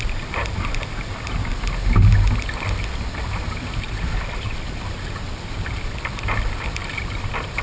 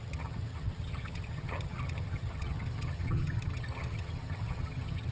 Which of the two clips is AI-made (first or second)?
second